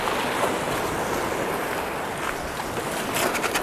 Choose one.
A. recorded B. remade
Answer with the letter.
A